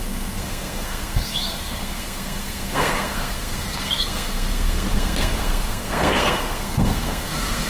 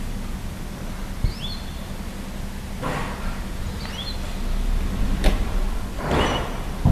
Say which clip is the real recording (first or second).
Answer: second